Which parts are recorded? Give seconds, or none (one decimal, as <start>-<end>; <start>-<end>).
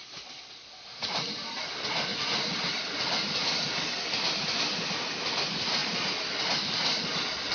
0.0-7.5